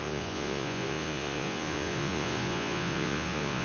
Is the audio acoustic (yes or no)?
no